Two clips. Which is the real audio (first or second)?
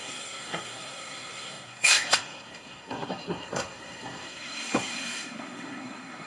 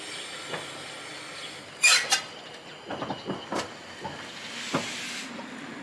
second